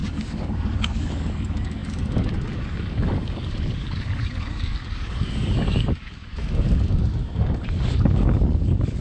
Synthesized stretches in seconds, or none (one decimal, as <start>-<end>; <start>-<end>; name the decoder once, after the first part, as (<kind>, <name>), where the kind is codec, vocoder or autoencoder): 0.0-9.0 (codec, DAC)